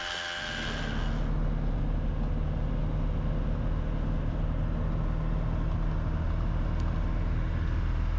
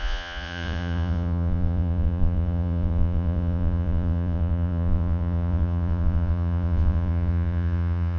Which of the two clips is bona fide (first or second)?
first